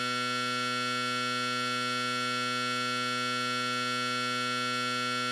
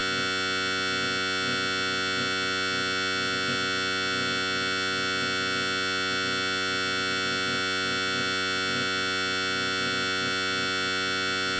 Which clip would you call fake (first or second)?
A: second